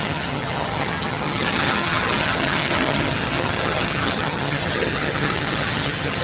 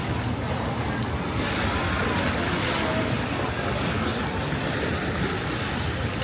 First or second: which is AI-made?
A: first